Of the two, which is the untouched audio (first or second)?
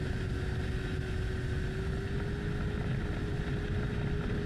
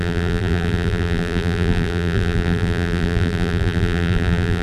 first